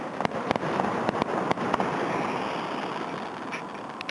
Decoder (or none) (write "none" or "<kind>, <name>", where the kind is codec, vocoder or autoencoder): none